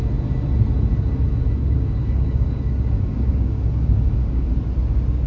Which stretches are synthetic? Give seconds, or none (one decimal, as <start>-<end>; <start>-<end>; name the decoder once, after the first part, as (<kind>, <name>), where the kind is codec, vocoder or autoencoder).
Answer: 1.6-4.5 (codec, DAC)